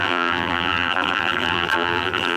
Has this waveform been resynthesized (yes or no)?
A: yes